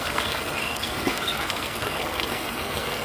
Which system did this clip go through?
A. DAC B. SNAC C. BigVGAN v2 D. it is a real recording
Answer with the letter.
B